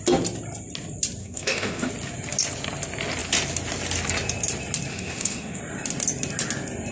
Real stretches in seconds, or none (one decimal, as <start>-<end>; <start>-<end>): 0.0-1.2; 1.9-4.9; 5.6-6.9